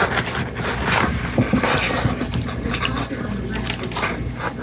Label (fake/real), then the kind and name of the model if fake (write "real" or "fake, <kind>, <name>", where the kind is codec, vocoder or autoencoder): real